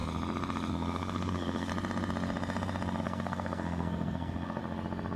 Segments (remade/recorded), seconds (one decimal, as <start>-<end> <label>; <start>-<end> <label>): 0.0-0.7 recorded; 0.7-1.7 remade; 1.7-3.0 recorded; 3.0-4.6 remade; 4.6-5.2 recorded